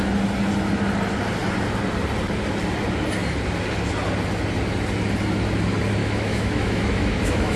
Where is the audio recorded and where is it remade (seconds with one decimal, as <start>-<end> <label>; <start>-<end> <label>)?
0.0-6.0 recorded; 6.0-7.6 remade